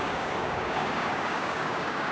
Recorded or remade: remade